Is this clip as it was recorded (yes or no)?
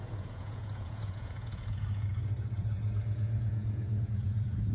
no